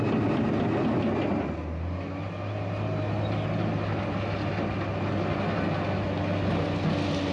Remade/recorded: recorded